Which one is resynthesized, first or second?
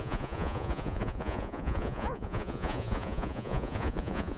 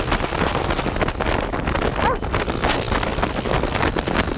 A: first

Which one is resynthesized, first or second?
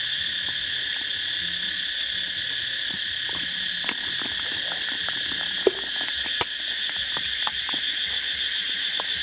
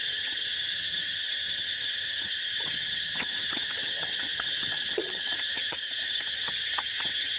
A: second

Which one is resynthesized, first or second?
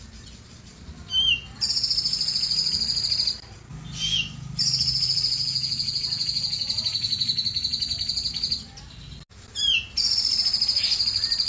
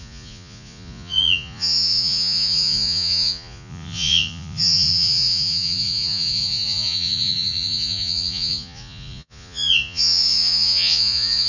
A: second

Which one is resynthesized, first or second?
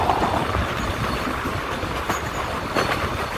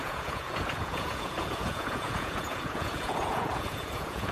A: second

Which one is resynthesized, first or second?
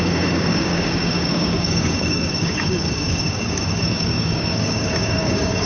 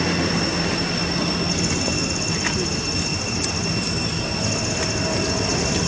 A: first